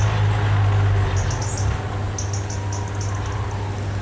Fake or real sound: real